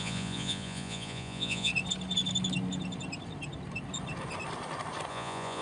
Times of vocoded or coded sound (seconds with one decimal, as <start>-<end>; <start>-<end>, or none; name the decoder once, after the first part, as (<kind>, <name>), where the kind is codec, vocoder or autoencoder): 0.0-1.7 (vocoder, Vocos); 5.1-5.6